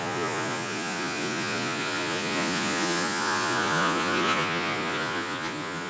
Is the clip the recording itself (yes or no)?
no